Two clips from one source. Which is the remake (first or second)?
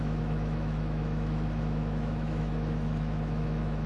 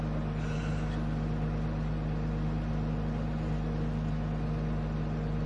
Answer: first